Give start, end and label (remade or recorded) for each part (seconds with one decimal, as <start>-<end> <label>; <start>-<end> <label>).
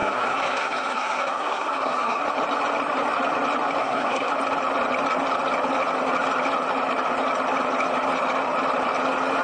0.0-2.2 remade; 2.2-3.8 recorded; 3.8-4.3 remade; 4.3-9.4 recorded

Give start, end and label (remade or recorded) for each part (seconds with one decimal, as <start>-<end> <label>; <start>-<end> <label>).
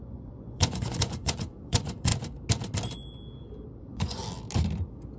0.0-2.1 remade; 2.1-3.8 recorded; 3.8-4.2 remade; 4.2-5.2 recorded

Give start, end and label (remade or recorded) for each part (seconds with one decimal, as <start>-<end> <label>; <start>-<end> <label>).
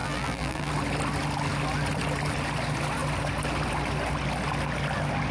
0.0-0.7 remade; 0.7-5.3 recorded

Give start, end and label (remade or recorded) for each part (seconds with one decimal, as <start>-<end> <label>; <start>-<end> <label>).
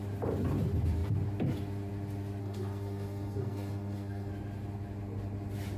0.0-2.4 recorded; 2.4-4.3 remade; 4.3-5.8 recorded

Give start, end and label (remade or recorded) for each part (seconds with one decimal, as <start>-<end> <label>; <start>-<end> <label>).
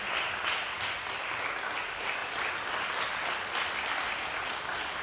0.0-2.2 recorded; 2.2-2.9 remade; 2.9-5.0 recorded